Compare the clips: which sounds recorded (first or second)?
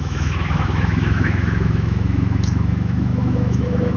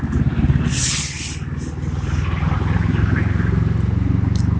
second